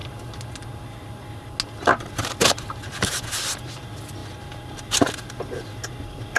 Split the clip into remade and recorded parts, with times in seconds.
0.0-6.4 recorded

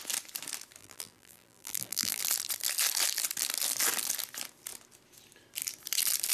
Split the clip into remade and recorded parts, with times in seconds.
0.0-0.8 recorded; 0.8-2.2 remade; 2.2-6.3 recorded

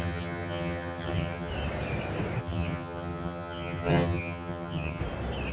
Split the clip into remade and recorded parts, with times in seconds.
0.0-1.5 remade; 1.5-2.4 recorded; 2.4-5.0 remade; 5.0-5.5 recorded

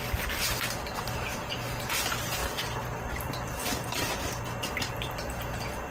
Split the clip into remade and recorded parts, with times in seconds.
0.0-1.1 recorded; 1.1-2.4 remade; 2.4-3.1 recorded; 3.1-3.6 remade; 3.6-4.9 recorded; 4.9-5.9 remade

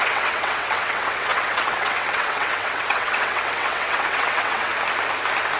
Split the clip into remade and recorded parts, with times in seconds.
0.0-4.7 remade; 4.7-5.6 recorded

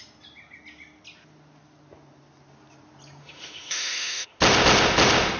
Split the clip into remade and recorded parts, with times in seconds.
0.0-3.2 recorded; 3.2-4.4 remade; 4.4-5.4 recorded

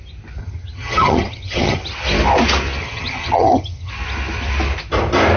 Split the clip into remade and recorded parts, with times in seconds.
0.0-0.4 recorded; 0.4-1.8 remade; 1.8-2.8 recorded; 2.8-3.9 remade; 3.9-5.4 recorded